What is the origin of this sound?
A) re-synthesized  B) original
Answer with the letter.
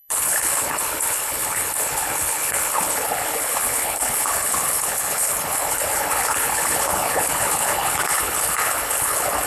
A